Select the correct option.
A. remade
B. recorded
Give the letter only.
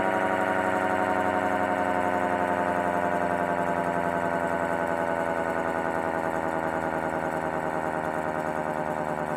B